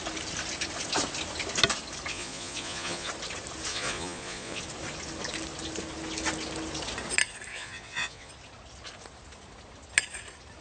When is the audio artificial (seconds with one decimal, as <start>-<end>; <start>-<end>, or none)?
2.1-3.1; 3.7-4.6; 7.5-8.3

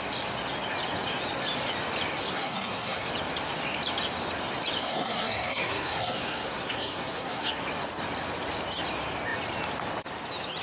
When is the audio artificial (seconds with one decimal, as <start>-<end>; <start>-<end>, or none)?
2.2-3.1; 4.8-7.6